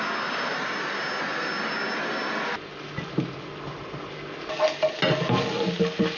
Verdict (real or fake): real